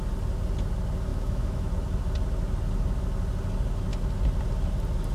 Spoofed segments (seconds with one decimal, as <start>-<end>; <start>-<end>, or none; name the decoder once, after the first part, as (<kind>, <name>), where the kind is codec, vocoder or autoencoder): 1.1-1.7 (autoencoder, DAC-VAE)